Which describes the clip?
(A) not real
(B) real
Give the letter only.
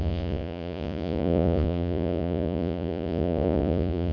A